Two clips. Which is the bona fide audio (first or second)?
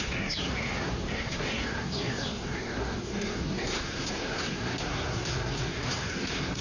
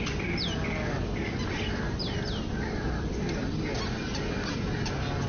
second